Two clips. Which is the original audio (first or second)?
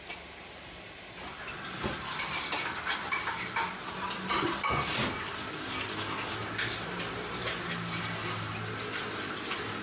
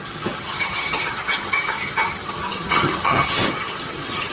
first